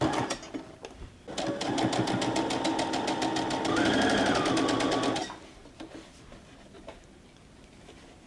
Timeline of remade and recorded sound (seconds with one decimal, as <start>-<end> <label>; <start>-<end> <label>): 0.0-8.3 recorded